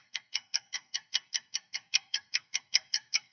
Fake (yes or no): yes